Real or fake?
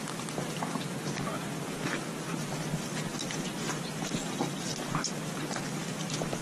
real